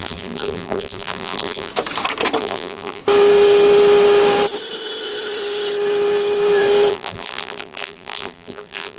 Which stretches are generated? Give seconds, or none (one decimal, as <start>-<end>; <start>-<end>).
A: 0.0-1.7; 2.4-3.0; 6.9-9.0